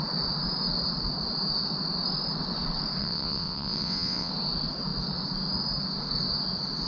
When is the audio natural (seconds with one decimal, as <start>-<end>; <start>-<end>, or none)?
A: 0.0-3.0; 4.3-6.9